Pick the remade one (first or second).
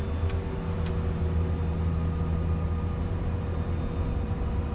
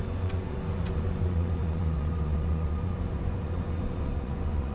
second